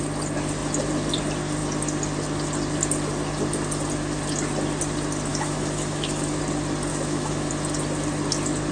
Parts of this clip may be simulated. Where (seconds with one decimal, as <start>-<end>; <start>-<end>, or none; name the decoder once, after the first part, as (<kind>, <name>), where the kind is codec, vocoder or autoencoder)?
5.3-6.4 (autoencoder, DAC-VAE); 6.9-7.5